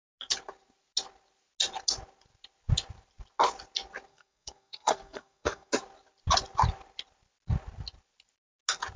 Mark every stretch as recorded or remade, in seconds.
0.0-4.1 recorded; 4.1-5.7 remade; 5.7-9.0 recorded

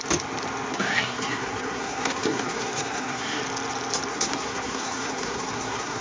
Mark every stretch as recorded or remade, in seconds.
0.0-0.7 recorded; 0.7-3.4 remade; 3.4-4.1 recorded; 4.1-6.0 remade

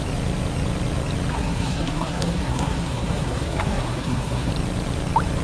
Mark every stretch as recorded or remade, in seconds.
0.0-1.3 recorded; 1.3-4.5 remade; 4.5-5.4 recorded

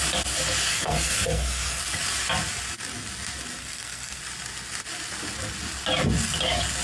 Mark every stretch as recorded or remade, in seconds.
0.0-0.7 recorded; 0.7-1.8 remade; 1.8-3.6 recorded; 3.6-4.2 remade; 4.2-6.8 recorded